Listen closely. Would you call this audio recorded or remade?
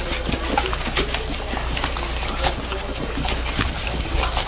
recorded